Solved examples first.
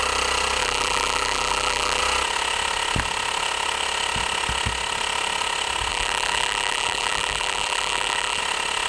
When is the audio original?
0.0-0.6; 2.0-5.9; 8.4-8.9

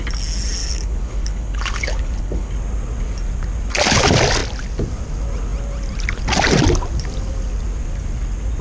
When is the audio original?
0.0-0.6; 2.5-8.6

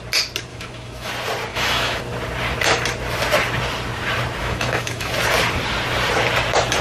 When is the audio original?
0.0-0.5; 1.1-1.5; 2.0-4.4; 5.1-6.8

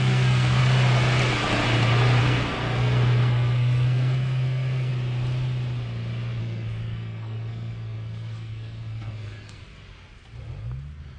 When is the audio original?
0.6-2.2; 4.9-6.4; 9.6-11.2